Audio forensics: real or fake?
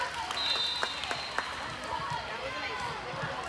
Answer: real